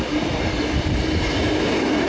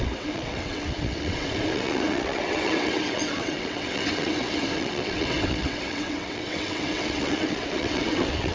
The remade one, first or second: second